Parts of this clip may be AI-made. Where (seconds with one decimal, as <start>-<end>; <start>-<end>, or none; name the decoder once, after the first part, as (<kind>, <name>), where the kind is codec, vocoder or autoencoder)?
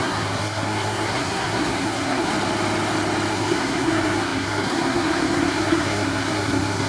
0.0-2.3 (codec, SNAC); 3.3-6.9